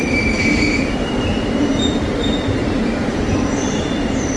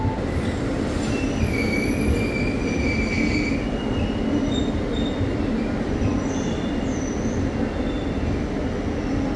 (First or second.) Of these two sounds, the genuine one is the second